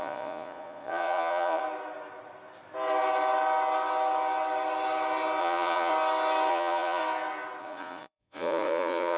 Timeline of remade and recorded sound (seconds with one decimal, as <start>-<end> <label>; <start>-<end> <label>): 0.0-1.6 remade; 1.6-5.4 recorded; 5.4-5.9 remade; 5.9-6.5 recorded; 6.5-7.0 remade; 7.0-7.6 recorded; 7.6-9.2 remade